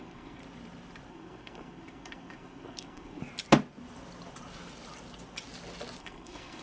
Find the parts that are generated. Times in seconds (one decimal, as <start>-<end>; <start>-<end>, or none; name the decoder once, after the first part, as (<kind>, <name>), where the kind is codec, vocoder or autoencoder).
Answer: 0.0-0.4 (codec, SNAC); 1.1-3.2; 6.0-6.6